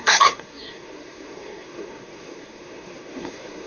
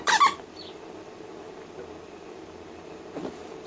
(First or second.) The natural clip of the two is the second